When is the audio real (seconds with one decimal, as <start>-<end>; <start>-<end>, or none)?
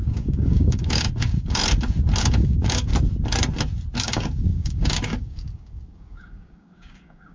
1.6-2.2; 2.9-4.0